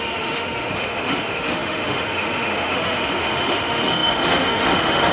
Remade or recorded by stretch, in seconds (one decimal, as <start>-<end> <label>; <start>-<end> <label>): 0.0-5.1 remade